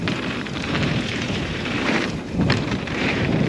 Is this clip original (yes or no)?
no